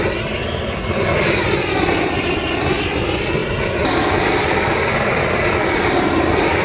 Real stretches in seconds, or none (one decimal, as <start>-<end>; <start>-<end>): 0.0-6.6